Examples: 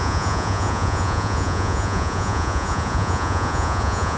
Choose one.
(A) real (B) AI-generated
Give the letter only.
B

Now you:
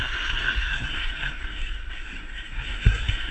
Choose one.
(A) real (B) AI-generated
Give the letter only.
B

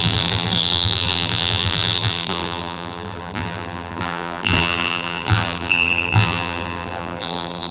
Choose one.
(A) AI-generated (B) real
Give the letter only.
A